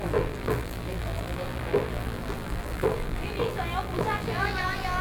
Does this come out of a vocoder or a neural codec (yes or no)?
yes